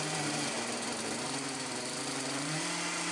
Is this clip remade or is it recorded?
remade